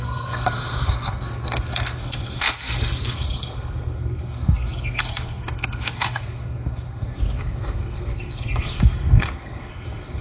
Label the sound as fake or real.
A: fake